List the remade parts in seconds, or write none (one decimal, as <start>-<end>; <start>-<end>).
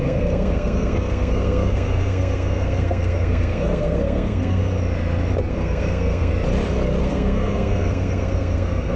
0.0-4.6; 5.5-6.3; 7.0-9.0